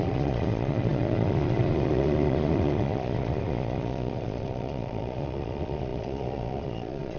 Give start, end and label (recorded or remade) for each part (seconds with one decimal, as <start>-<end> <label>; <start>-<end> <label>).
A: 0.0-7.2 remade